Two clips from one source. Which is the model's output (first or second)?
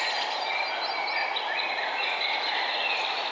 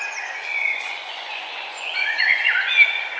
second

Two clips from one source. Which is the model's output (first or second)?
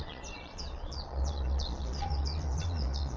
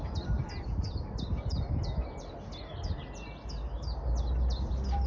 first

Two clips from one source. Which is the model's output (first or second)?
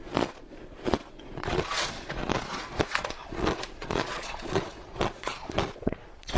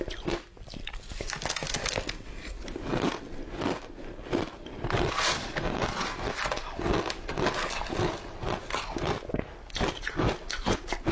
first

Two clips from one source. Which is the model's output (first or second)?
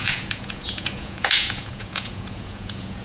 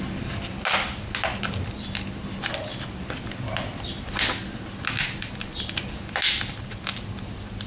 first